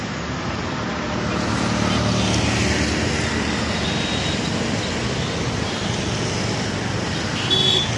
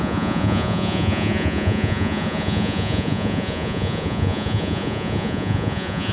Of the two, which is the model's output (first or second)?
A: second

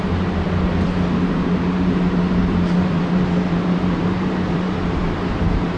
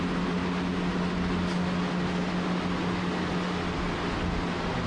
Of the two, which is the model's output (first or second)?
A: first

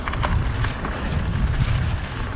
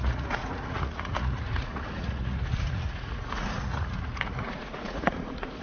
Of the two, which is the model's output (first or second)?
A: second